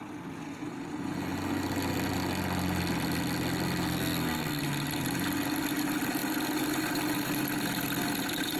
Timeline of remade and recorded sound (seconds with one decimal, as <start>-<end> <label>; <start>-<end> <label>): 0.0-3.9 recorded; 3.9-4.6 remade; 4.6-8.6 recorded

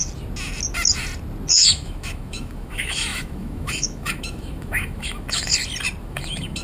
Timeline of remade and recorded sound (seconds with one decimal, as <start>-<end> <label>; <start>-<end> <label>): 0.0-1.5 recorded; 1.5-5.5 remade; 5.5-6.0 recorded; 6.0-6.6 remade

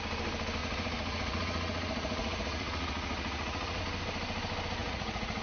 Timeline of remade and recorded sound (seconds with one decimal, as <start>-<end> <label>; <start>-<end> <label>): 0.0-0.6 recorded; 0.6-3.8 remade; 3.8-4.8 recorded; 4.8-5.4 remade

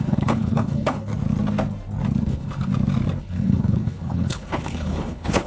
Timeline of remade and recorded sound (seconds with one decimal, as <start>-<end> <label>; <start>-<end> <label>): 0.0-1.1 remade; 1.1-2.2 recorded; 2.2-2.7 remade; 2.7-3.2 recorded; 3.2-5.5 remade

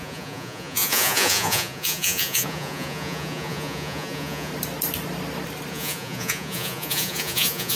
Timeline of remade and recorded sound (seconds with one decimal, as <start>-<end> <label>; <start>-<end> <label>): 0.0-4.5 remade; 4.5-5.7 recorded; 5.7-7.8 remade